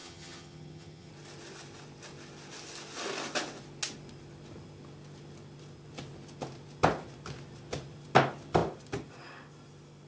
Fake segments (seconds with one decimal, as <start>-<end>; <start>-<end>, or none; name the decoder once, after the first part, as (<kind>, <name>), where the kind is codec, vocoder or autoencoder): 0.0-1.1 (vocoder, HiFi-GAN)